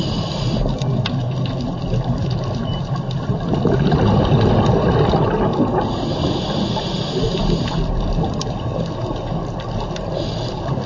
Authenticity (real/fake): real